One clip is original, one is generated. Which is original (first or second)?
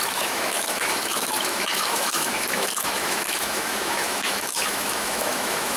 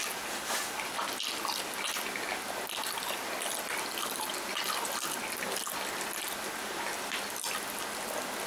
second